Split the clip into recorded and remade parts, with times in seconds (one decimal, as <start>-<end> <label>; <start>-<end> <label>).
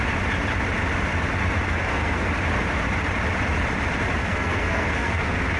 0.0-1.8 recorded; 1.8-2.3 remade; 2.3-4.2 recorded; 4.2-5.6 remade